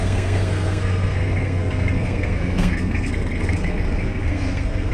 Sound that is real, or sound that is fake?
fake